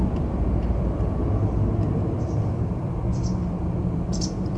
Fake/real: fake